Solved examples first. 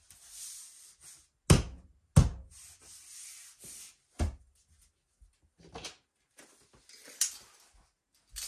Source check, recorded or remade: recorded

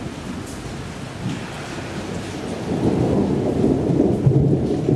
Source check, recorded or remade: recorded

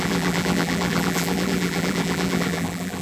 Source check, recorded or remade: remade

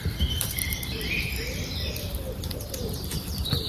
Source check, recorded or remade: remade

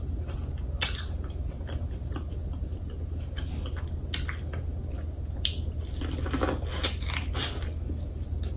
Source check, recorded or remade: recorded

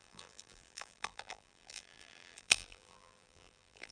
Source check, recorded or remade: remade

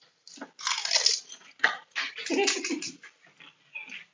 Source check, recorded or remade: recorded